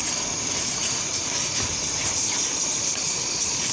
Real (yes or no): no